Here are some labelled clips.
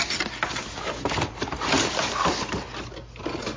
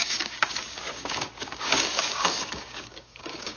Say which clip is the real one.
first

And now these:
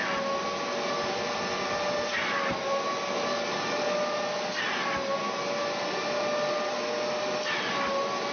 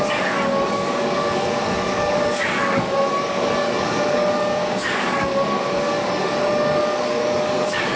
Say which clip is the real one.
first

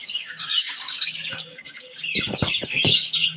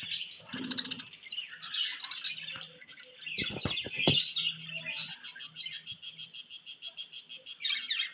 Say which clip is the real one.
second